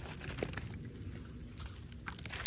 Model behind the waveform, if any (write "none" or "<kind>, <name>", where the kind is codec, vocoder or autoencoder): none